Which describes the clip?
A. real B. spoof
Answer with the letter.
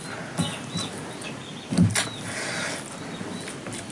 A